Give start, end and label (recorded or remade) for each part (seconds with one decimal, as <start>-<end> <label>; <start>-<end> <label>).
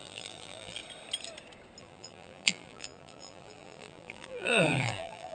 0.0-0.8 remade; 0.8-1.8 recorded; 1.8-5.3 remade